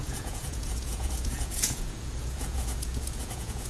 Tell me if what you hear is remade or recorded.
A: remade